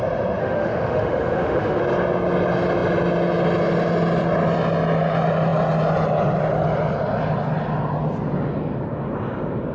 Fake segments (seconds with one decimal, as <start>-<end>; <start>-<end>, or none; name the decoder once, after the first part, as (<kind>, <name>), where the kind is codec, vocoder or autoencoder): 0.4-1.8 (autoencoder, DAC-VAE)